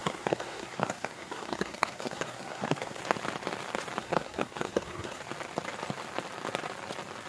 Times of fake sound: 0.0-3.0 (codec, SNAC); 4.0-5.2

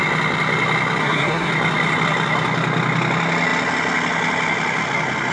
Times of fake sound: 1.0-1.5 (codec, SNAC)

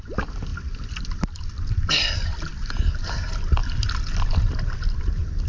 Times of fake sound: none

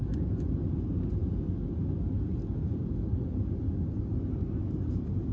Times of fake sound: none

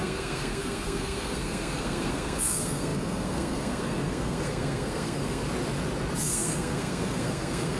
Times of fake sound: 0.0-5.4 (codec, SNAC); 6.2-7.8

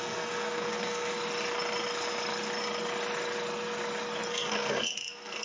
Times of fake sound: 0.0-1.1 (codec, SNAC); 4.3-5.4

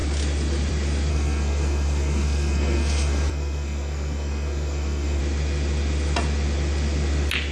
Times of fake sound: 1.1-5.2 (codec, SNAC)